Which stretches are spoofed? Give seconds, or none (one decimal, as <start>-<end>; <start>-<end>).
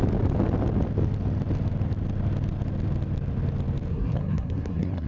3.9-5.1